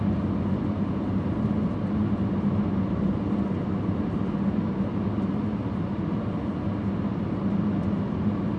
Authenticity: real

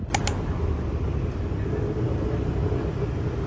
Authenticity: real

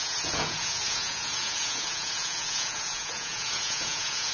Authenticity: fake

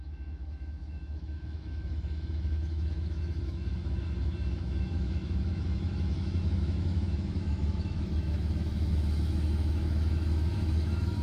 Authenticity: fake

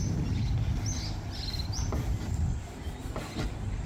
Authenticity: real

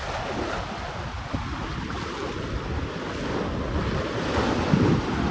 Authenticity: real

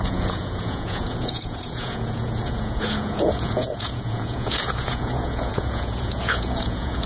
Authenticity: fake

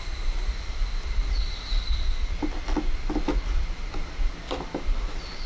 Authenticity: real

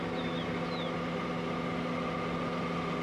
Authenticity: real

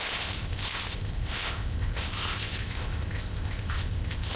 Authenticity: fake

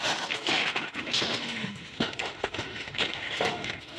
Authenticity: fake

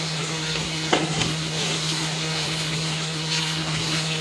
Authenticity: fake